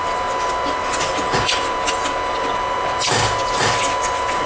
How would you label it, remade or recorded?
recorded